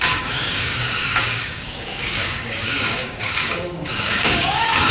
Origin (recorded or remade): remade